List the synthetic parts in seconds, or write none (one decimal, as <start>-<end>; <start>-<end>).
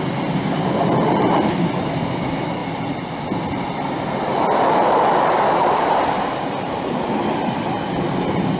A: none